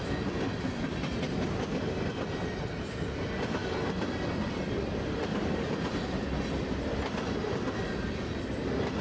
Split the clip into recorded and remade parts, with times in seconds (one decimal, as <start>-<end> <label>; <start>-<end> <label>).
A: 0.0-9.0 recorded